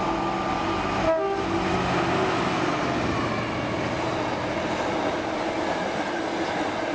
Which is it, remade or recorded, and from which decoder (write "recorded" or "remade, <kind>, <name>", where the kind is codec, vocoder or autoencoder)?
recorded